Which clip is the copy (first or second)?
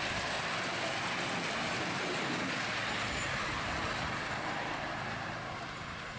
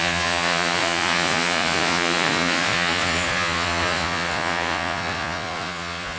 second